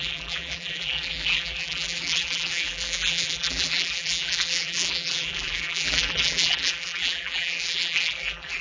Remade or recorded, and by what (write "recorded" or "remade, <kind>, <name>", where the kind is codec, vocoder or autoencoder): remade, vocoder, BigVGAN v2